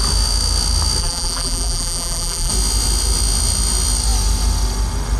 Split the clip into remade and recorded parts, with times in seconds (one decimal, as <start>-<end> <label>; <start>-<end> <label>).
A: 0.0-1.0 recorded; 1.0-2.5 remade; 2.5-5.2 recorded